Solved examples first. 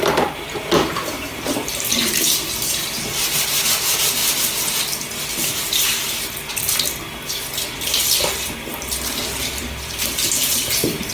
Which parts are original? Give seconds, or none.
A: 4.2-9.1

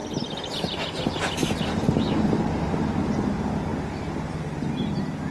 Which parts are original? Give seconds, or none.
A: 0.0-5.3

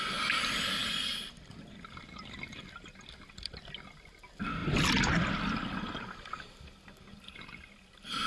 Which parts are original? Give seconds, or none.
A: 0.0-8.3

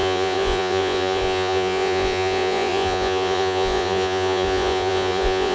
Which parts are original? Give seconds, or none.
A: none

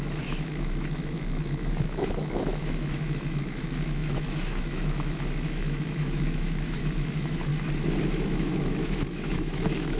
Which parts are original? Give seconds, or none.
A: 7.5-8.0

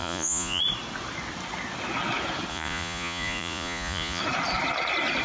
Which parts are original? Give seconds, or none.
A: 0.6-2.5; 4.2-5.2

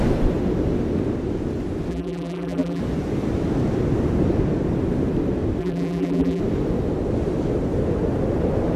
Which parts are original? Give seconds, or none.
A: 0.0-1.9; 2.8-5.6; 6.4-8.8

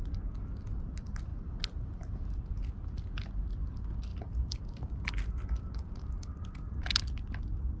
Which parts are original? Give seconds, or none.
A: 0.0-7.8